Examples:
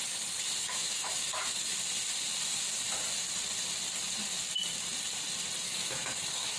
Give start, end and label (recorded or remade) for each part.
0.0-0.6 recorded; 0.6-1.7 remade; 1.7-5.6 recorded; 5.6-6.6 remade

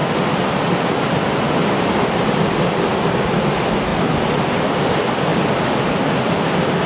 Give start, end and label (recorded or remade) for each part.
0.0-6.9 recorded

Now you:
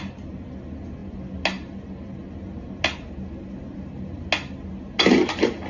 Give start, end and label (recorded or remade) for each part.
0.0-5.7 recorded